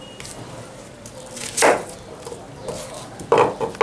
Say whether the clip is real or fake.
real